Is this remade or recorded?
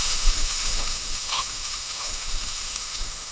remade